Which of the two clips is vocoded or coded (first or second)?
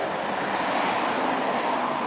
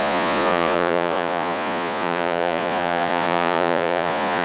second